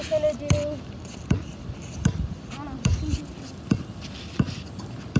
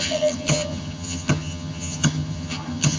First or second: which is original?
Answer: first